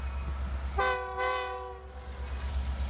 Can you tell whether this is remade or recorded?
recorded